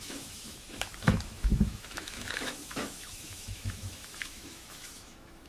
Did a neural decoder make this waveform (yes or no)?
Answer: yes